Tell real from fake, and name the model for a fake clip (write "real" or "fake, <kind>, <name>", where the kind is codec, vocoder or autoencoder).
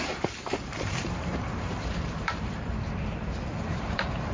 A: fake, vocoder, BigVGAN v2